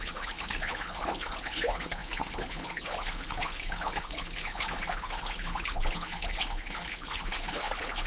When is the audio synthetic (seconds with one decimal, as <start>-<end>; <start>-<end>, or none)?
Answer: 0.0-8.1